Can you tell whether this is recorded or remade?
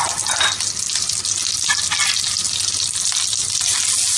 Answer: recorded